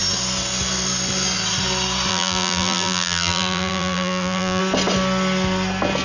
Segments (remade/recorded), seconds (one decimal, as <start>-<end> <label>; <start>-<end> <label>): 0.0-2.1 recorded; 2.1-4.6 remade; 4.6-6.0 recorded